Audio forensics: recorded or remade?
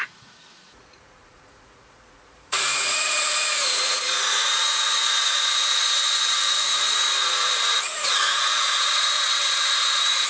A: remade